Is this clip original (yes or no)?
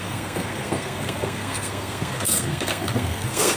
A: no